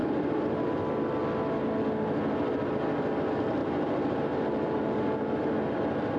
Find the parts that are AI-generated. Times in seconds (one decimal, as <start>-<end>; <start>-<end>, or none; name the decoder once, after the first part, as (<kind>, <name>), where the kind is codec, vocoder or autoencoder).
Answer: 0.0-0.7 (vocoder, BigVGAN v2); 3.6-5.8